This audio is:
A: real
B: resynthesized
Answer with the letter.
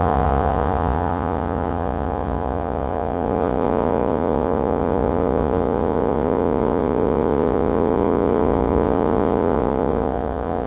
B